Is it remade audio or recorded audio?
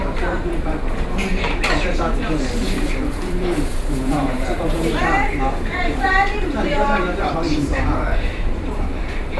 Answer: remade